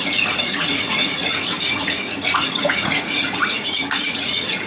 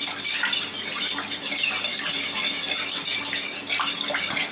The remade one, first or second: first